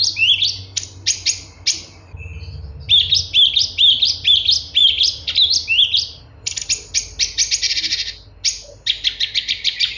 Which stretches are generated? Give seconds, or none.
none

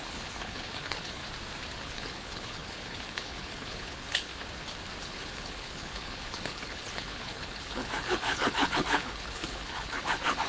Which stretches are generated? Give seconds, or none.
0.0-1.2 (codec, HILCodec); 1.8-4.3; 5.0-10.5

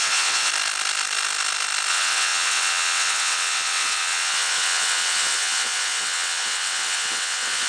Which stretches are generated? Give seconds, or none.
0.0-0.5 (vocoder, WaveNeXt); 1.9-7.7

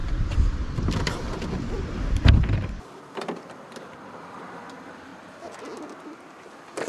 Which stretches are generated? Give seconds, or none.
0.0-5.1 (vocoder, BigVGAN v2); 6.4-6.9

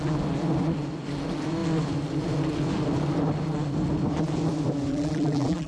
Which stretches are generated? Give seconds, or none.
4.9-5.7 (vocoder, BigVGAN v2)

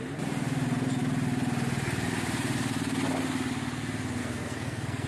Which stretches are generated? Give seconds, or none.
4.2-5.1 (codec, SNAC)

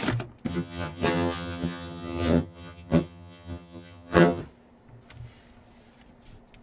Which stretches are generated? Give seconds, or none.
0.5-4.4 (vocoder, HiFi-GAN)